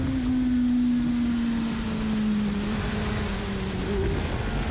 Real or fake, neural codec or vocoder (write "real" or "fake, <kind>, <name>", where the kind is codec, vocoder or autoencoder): real